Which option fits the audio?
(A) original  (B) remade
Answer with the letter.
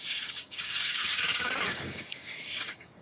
B